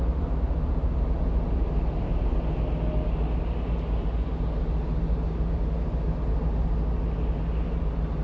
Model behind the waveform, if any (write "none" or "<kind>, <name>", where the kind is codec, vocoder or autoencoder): none